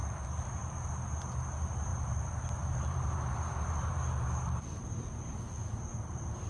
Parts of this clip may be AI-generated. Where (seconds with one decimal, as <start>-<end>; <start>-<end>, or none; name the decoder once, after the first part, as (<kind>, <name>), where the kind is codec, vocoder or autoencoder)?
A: 1.9-4.6 (vocoder, BigVGAN v2); 5.9-6.5